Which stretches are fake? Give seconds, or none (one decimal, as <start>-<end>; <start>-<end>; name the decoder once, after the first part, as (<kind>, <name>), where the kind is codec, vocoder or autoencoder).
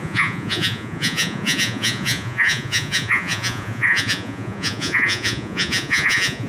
0.0-6.5 (vocoder, Vocos)